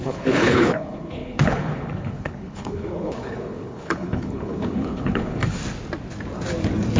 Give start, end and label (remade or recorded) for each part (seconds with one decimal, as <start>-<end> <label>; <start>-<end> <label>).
0.0-5.6 remade; 5.6-7.0 recorded